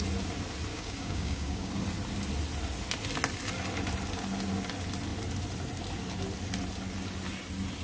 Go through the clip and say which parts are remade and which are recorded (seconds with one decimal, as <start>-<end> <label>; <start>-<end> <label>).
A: 0.0-0.7 recorded; 0.7-1.7 remade; 1.7-7.8 recorded